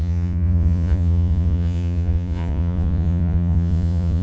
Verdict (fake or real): fake